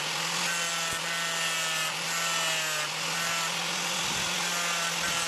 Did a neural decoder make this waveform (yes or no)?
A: no